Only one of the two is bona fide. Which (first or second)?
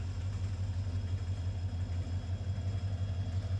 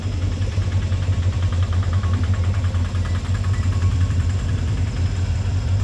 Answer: first